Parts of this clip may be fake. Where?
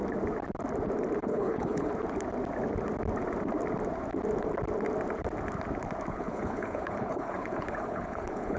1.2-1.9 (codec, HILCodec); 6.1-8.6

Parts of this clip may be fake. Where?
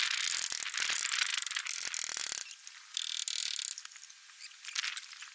none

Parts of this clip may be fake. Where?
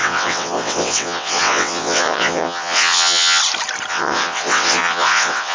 0.0-3.4 (vocoder, WaveNeXt); 3.9-5.5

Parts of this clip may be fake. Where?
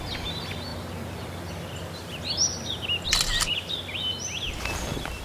none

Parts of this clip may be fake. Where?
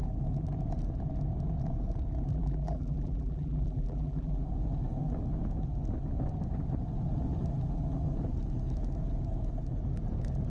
2.3-4.4 (vocoder, BigVGAN v2)